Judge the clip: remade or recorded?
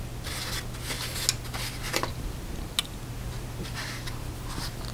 recorded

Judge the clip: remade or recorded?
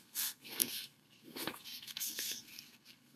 remade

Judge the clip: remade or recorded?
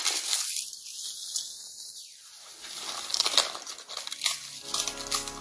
recorded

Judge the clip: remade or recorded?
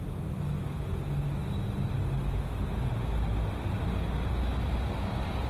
recorded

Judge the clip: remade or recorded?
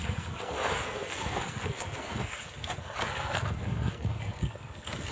remade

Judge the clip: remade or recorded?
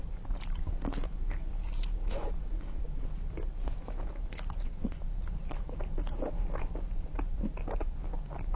recorded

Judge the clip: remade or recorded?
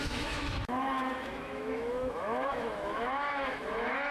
remade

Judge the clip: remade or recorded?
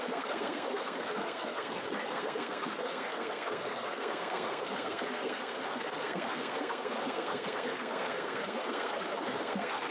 remade